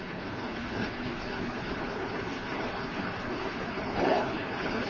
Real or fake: fake